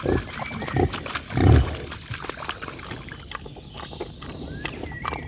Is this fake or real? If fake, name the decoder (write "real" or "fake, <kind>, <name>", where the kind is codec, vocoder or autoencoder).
real